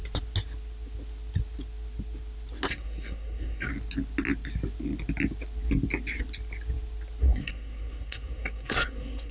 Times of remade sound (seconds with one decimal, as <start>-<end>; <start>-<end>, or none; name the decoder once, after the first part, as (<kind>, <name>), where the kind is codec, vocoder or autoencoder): 2.7-3.7 (codec, SNAC); 7.2-9.3